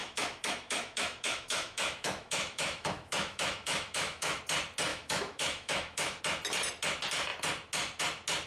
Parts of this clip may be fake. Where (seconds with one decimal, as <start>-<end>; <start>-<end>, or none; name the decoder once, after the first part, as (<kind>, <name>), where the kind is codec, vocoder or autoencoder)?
0.0-4.4 (autoencoder, DAC-VAE); 4.9-6.2